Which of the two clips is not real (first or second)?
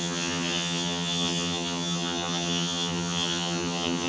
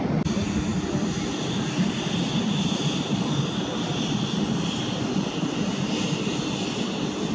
first